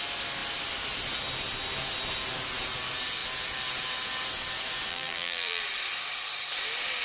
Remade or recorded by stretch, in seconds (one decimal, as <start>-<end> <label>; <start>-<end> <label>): 0.0-4.9 recorded; 4.9-5.6 remade; 5.6-7.0 recorded